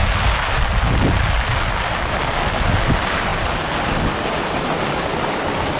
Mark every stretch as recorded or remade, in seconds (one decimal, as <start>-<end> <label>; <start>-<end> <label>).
0.0-5.8 recorded